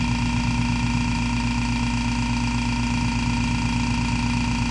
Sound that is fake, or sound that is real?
real